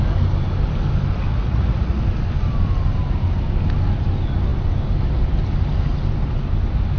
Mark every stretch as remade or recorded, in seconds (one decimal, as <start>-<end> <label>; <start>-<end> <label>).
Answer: 0.0-1.3 recorded; 1.3-2.0 remade; 2.0-7.0 recorded